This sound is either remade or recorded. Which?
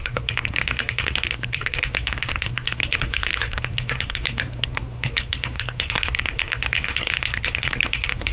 remade